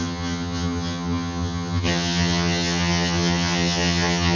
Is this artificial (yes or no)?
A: yes